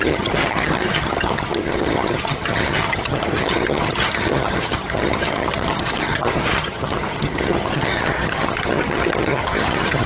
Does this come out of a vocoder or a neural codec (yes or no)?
yes